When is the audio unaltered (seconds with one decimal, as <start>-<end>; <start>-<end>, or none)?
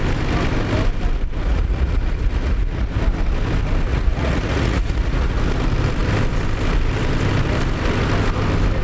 0.0-1.5; 2.9-3.9; 5.4-8.8